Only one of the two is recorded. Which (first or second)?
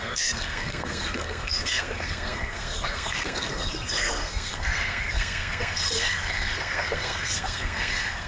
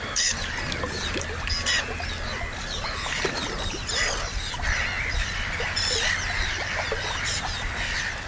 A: second